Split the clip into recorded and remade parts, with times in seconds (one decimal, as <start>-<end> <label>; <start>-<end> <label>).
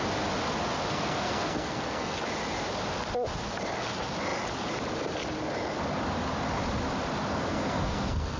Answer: 0.0-0.9 recorded; 0.9-2.2 remade; 2.2-7.3 recorded; 7.3-8.4 remade